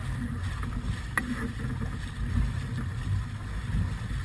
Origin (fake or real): real